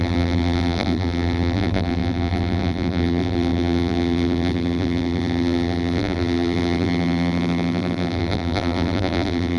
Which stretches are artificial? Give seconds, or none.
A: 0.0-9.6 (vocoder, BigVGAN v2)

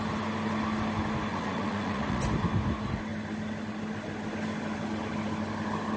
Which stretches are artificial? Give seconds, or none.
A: 1.3-2.2 (vocoder, Vocos)